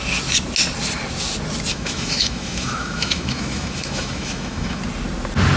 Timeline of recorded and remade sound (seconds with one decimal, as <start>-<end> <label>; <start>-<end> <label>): 0.0-1.7 recorded; 1.7-4.8 remade; 4.8-5.6 recorded